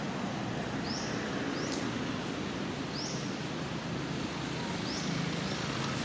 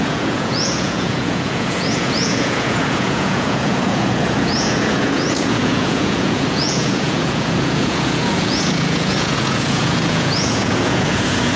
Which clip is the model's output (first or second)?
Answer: second